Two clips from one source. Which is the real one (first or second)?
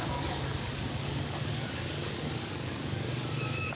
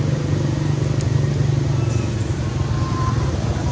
second